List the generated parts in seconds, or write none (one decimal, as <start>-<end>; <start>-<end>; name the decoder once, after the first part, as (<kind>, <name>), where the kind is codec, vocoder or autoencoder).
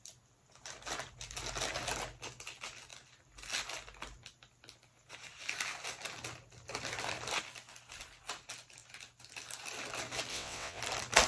10.3-10.8 (vocoder, WaveNeXt)